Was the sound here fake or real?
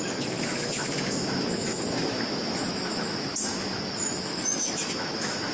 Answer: fake